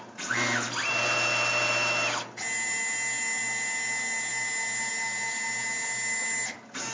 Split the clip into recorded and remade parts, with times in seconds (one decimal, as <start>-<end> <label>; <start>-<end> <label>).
0.0-6.9 recorded